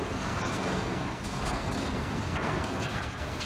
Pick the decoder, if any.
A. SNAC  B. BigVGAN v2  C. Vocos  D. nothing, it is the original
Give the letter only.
A